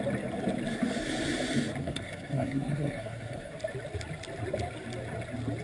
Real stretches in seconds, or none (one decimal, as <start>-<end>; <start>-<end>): 0.0-1.8; 3.5-5.6